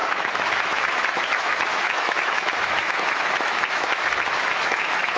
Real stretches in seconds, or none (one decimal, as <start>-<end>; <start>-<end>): none